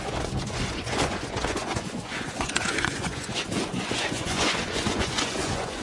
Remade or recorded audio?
remade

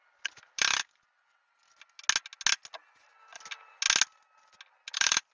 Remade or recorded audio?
recorded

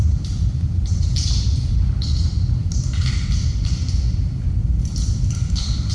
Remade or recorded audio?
remade